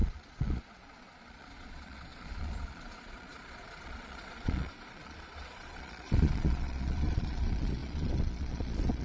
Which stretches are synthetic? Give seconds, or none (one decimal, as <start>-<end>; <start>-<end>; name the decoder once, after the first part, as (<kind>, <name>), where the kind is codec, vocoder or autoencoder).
0.0-9.0 (vocoder, Vocos)